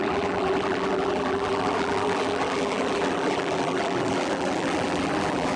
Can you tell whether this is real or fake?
fake